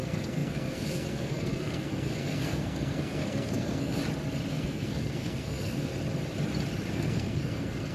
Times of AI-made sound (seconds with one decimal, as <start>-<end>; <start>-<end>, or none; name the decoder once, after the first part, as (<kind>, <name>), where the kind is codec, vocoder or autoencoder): 0.0-4.0 (codec, SNAC); 4.5-5.9; 6.9-7.9